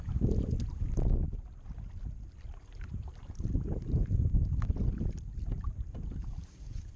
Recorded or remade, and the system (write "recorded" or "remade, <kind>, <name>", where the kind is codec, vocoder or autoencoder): recorded